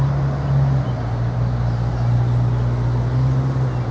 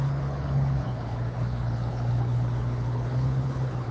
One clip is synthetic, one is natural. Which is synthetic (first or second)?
second